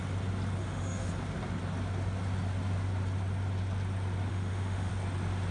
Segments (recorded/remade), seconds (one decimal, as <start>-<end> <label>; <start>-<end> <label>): 0.0-0.6 recorded; 0.6-1.1 remade; 1.1-4.3 recorded; 4.3-4.9 remade; 4.9-5.5 recorded